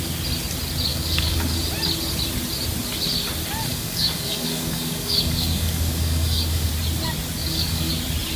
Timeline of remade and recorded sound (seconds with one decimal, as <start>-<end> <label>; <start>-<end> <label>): 0.0-0.9 recorded; 0.9-1.6 remade; 1.6-3.7 recorded; 3.7-6.7 remade; 6.7-7.4 recorded; 7.4-7.9 remade; 7.9-8.4 recorded